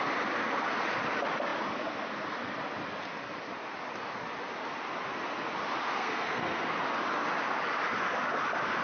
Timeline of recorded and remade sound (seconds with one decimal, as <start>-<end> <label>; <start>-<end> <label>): 0.0-5.9 recorded; 5.9-6.7 remade; 6.7-8.8 recorded